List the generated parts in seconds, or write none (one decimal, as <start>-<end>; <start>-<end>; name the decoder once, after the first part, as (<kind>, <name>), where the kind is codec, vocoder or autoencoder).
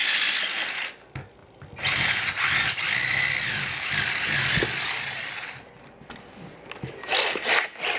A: 0.0-0.9 (vocoder, BigVGAN v2); 1.4-5.7